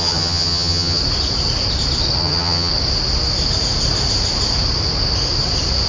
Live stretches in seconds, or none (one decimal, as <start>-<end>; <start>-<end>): 1.0-2.2; 2.7-5.9